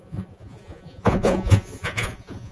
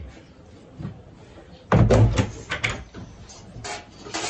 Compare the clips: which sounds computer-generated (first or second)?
first